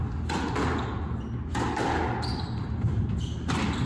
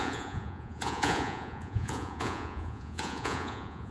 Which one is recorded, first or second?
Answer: first